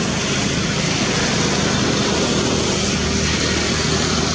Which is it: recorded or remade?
recorded